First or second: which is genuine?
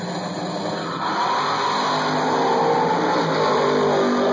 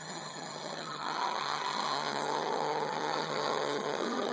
first